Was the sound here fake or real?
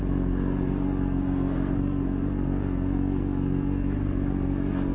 fake